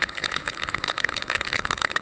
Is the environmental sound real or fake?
fake